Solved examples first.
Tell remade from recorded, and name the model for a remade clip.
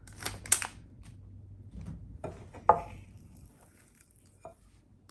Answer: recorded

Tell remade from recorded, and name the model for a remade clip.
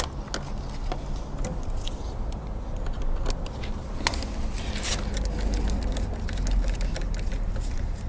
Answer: recorded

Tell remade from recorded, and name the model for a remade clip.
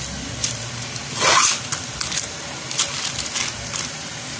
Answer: remade, vocoder, BigVGAN v2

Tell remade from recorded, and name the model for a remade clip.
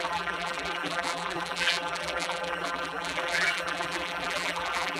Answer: remade, vocoder, BigVGAN v2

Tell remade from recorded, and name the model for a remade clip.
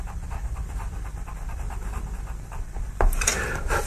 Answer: remade, vocoder, BigVGAN v2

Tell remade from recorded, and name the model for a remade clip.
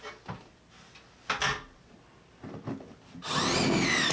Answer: recorded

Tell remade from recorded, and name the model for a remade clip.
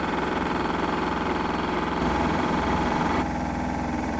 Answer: remade, vocoder, BigVGAN v2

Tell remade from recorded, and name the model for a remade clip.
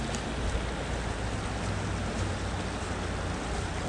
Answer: recorded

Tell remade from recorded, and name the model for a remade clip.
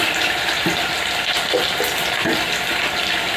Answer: recorded